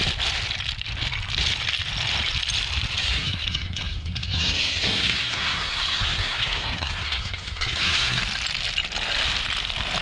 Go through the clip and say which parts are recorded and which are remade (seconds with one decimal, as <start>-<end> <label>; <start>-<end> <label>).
0.0-3.0 recorded; 3.0-8.2 remade; 8.2-10.0 recorded